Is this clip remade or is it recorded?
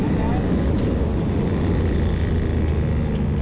recorded